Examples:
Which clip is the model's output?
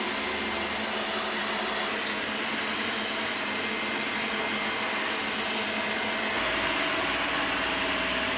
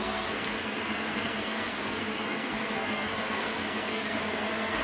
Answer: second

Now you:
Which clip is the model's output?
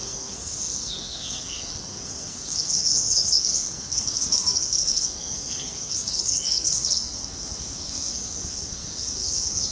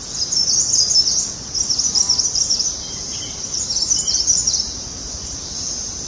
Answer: first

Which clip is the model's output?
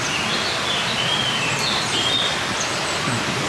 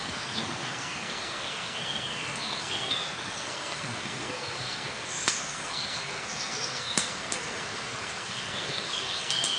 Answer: second